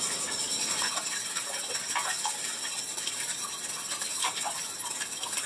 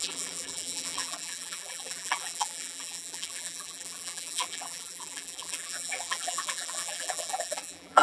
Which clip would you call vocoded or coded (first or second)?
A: second